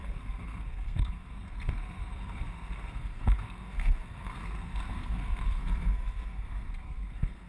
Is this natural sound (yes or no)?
no